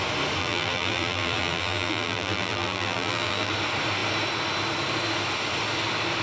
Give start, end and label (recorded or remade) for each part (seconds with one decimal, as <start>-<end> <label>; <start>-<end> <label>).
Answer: 0.0-0.4 recorded; 0.4-3.5 remade; 3.5-6.2 recorded

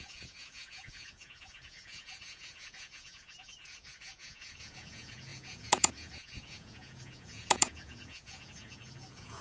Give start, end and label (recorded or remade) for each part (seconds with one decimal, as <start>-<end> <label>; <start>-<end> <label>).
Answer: 0.0-9.4 remade

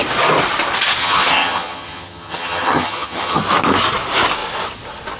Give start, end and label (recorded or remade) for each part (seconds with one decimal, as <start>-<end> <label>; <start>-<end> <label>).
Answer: 0.0-1.0 recorded; 1.0-3.4 remade; 3.4-5.2 recorded